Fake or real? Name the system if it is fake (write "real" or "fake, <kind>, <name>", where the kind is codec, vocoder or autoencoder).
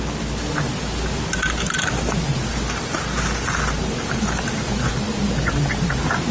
real